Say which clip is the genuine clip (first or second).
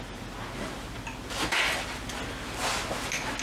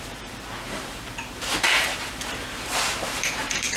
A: first